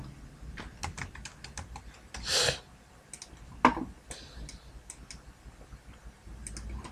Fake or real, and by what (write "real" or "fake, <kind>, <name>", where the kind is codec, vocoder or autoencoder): real